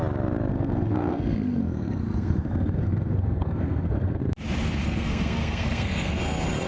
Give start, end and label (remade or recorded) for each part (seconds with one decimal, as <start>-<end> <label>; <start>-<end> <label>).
0.0-0.5 recorded; 0.5-4.2 remade; 4.2-4.8 recorded; 4.8-6.2 remade; 6.2-6.7 recorded